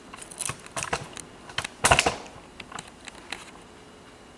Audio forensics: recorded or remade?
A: recorded